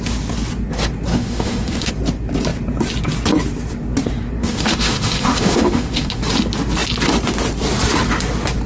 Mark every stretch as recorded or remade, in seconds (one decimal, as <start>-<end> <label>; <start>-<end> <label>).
0.0-1.1 recorded; 1.1-1.9 remade; 1.9-4.4 recorded; 4.4-6.2 remade; 6.2-8.7 recorded